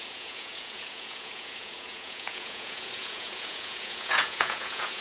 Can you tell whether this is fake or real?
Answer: fake